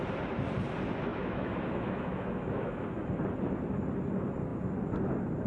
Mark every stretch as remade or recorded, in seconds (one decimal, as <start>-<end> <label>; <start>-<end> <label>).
0.0-1.1 recorded; 1.1-3.1 remade; 3.1-5.5 recorded